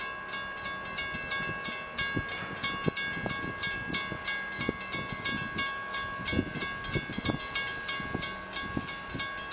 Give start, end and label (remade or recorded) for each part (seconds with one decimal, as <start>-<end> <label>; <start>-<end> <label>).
0.0-9.5 recorded